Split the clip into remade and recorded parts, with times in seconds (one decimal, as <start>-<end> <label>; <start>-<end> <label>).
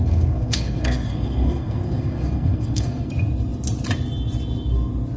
0.0-3.1 remade; 3.1-5.2 recorded